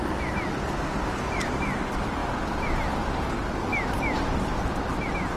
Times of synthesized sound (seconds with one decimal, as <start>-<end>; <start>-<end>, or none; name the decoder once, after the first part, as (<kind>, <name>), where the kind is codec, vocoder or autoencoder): none